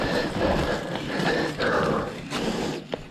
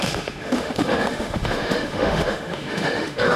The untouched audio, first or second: first